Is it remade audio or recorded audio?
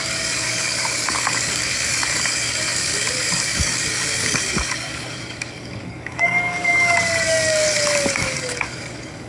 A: remade